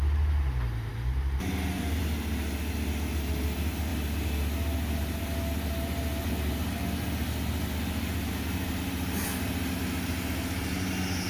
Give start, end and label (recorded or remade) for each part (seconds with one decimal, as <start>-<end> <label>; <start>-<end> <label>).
0.0-11.3 recorded